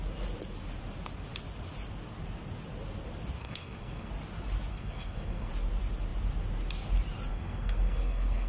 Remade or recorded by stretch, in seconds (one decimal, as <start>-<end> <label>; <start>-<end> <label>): 0.0-3.4 recorded; 3.4-4.1 remade; 4.1-4.7 recorded; 4.7-5.5 remade; 5.5-7.3 recorded; 7.3-8.5 remade